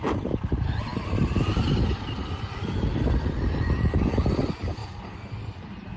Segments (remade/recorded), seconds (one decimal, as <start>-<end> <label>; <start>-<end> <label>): 0.0-6.0 recorded

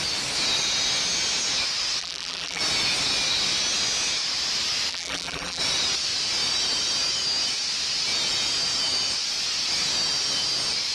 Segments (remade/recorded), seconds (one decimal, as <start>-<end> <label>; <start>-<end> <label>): 0.0-2.0 recorded; 2.0-2.6 remade; 2.6-4.9 recorded; 4.9-5.6 remade; 5.6-10.9 recorded

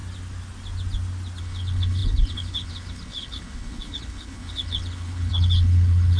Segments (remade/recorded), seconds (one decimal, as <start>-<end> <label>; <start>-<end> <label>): 0.0-1.4 recorded; 1.4-6.2 remade